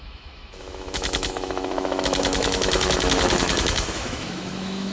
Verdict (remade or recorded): remade